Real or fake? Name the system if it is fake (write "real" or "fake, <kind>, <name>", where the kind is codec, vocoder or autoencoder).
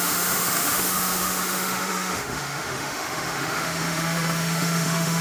fake, autoencoder, DAC-VAE